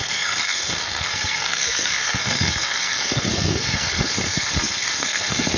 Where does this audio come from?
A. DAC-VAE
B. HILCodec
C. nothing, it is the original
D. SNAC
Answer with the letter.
D